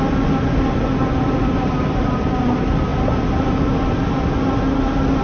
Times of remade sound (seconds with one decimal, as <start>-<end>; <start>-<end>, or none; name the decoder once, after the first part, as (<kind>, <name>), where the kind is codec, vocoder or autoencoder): none